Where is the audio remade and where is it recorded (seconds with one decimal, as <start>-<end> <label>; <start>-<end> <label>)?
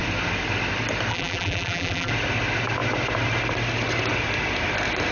0.0-1.1 recorded; 1.1-2.1 remade; 2.1-5.1 recorded